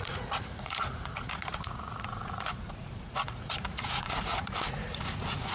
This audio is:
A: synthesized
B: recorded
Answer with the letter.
A